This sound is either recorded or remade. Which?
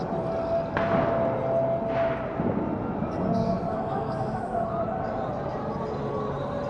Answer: recorded